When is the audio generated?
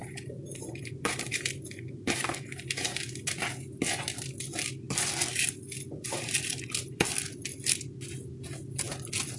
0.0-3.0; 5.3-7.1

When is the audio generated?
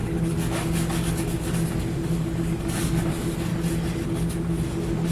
0.0-3.5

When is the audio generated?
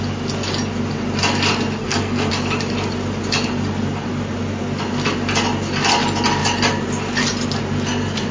1.8-2.3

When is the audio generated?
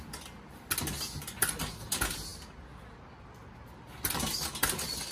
none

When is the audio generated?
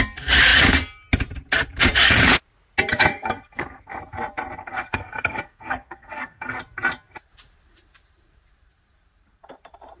3.1-4.0; 4.6-6.6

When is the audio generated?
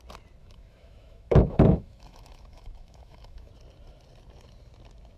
0.4-3.5